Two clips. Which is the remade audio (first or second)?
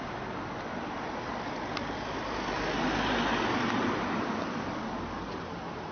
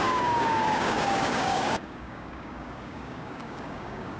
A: second